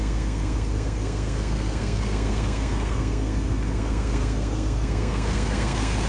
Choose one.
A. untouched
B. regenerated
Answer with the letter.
B